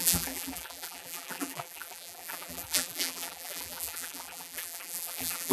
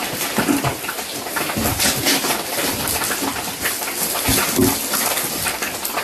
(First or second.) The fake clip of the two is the first